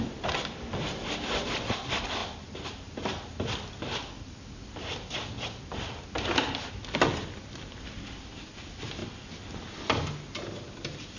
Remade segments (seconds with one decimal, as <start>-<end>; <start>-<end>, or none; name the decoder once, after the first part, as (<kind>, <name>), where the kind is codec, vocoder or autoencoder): none